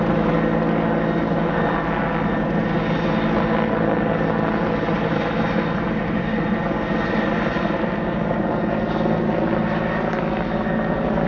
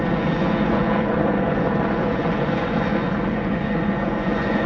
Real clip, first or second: first